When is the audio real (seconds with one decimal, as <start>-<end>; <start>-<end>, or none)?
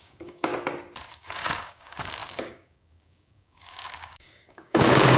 0.5-1.1